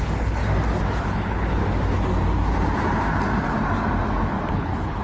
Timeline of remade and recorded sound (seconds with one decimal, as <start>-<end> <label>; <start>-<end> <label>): 0.0-0.4 remade; 0.4-1.0 recorded; 1.0-1.6 remade; 1.6-4.5 recorded; 4.5-5.0 remade